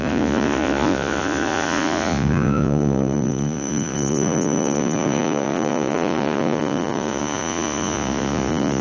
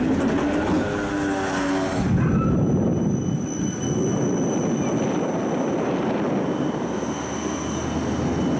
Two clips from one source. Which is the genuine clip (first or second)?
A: second